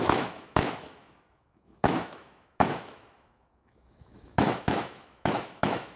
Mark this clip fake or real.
fake